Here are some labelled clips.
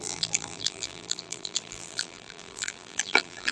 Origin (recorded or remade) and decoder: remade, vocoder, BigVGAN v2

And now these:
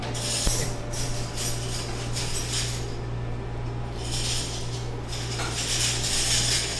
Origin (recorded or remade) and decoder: recorded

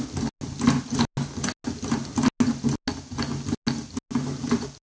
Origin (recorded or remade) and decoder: recorded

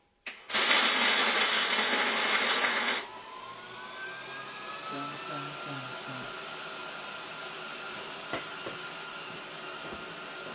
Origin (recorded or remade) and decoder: recorded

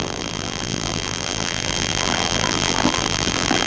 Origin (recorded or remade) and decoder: remade, vocoder, BigVGAN v2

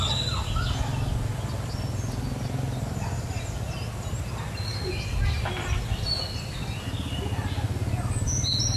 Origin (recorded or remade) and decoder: recorded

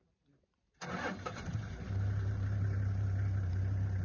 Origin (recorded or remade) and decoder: remade, vocoder, BigVGAN v2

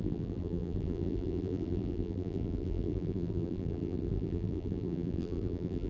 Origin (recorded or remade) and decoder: remade, vocoder, BigVGAN v2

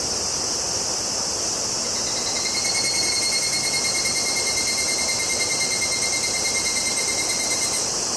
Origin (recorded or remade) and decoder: remade, vocoder, BigVGAN v2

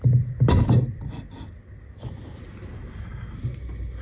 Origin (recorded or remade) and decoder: recorded